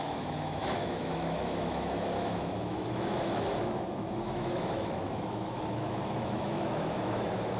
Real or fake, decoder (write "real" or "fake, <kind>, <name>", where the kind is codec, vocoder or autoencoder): fake, autoencoder, DAC-VAE